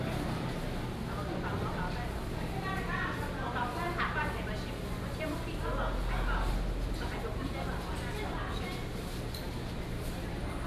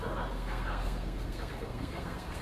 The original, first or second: first